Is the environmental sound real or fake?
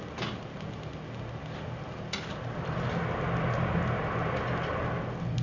real